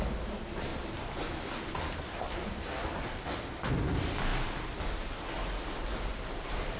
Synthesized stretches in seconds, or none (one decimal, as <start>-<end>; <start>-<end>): 0.7-3.4; 4.3-4.8; 6.1-6.8